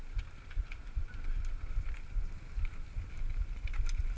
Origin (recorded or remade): recorded